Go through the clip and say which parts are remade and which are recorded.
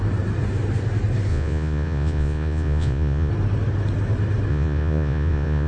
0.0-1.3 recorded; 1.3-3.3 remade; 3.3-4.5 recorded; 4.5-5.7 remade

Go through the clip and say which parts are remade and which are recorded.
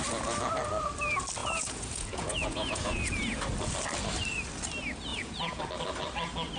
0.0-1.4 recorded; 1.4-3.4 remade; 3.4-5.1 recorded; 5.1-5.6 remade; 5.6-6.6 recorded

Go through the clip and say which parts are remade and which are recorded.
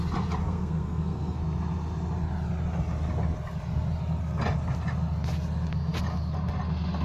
0.0-0.4 recorded; 0.4-1.4 remade; 1.4-7.0 recorded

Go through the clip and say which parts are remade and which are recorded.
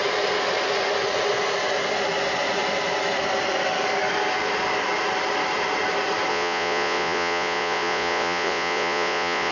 0.0-6.3 recorded; 6.3-9.5 remade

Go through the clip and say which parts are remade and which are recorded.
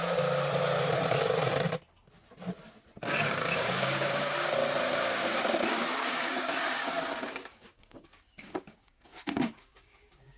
0.0-3.1 recorded; 3.1-4.6 remade; 4.6-5.7 recorded; 5.7-10.4 remade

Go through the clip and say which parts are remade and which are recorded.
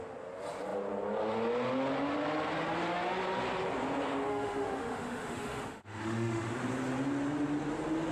0.0-4.3 recorded; 4.3-6.5 remade; 6.5-8.1 recorded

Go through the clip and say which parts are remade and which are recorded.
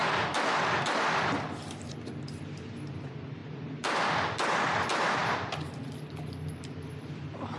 0.0-7.6 recorded